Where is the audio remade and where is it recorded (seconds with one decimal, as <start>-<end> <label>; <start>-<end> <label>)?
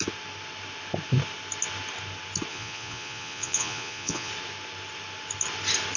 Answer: 0.0-2.5 recorded; 2.5-4.3 remade; 4.3-6.0 recorded